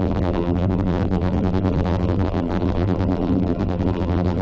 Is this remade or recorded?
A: remade